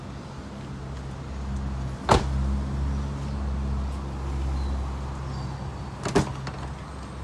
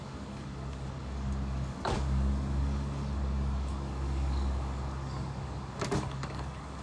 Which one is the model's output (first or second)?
second